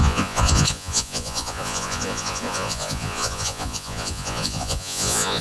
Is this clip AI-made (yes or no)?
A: yes